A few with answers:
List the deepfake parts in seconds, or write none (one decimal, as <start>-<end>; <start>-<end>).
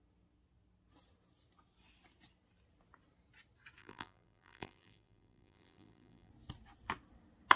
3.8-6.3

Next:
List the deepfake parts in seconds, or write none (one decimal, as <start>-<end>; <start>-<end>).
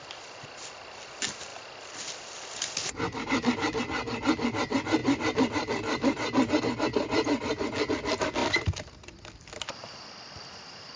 1.5-2.1; 5.0-6.6; 8.4-9.4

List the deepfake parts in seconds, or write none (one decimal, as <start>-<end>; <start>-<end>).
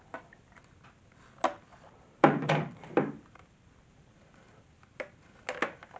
1.7-4.4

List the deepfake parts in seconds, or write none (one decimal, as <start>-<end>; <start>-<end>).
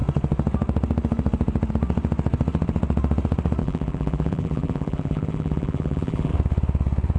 3.6-6.3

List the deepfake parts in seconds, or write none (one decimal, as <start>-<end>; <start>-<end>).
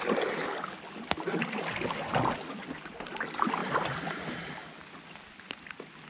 none